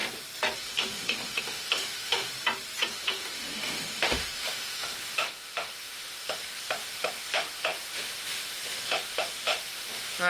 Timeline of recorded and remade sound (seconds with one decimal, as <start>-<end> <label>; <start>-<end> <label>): 0.0-0.6 recorded; 0.6-2.3 remade; 2.3-2.9 recorded; 2.9-10.3 remade